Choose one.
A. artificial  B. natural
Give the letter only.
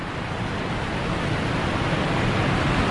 B